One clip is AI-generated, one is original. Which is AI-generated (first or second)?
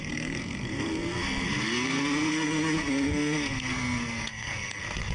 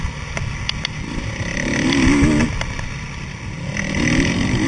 first